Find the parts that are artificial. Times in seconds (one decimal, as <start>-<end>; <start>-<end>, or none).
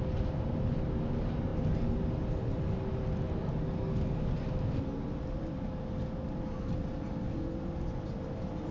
none